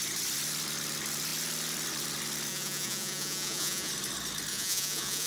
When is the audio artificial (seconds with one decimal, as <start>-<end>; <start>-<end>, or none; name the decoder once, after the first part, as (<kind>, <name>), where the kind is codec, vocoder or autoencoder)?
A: 2.5-3.9 (vocoder, Vocos); 4.5-5.3